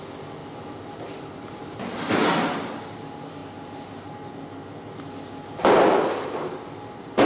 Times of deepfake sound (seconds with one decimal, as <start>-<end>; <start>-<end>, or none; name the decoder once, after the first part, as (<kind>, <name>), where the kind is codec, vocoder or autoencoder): none

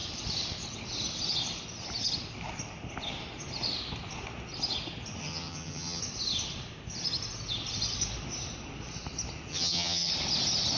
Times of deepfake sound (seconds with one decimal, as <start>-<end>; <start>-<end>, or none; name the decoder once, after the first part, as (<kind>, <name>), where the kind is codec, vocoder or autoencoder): 5.2-6.0 (vocoder, HiFi-GAN); 9.5-10.1

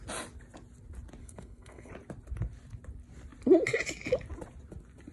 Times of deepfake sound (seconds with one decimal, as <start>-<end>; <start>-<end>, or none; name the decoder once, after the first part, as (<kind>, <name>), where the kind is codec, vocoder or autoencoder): 1.2-1.9 (codec, SNAC)

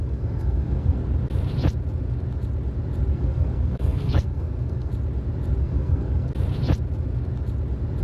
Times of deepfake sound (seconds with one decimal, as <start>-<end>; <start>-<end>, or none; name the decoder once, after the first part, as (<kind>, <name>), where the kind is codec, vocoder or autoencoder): 0.0-1.0 (codec, SNAC); 3.1-4.9; 5.6-6.3

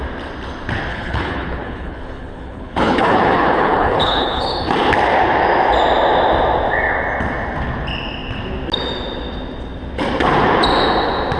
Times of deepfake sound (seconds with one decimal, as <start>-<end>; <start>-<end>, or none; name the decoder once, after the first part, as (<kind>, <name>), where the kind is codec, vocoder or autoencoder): 0.9-4.6 (codec, HILCodec)

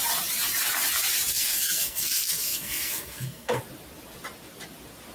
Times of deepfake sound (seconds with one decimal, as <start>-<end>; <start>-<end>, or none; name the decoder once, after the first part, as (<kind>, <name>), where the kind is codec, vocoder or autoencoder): 1.3-3.6 (codec, SNAC)

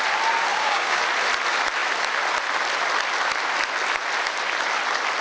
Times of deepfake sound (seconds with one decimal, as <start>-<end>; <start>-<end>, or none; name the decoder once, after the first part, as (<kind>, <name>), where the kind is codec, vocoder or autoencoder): 0.5-1.0 (codec, DAC)

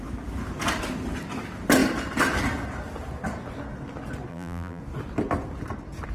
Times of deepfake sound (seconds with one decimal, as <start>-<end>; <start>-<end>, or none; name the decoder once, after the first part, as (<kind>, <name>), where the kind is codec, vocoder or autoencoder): 4.3-4.8 (vocoder, BigVGAN v2)